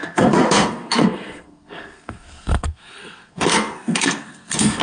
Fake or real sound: fake